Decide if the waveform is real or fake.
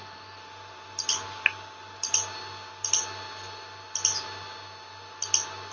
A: real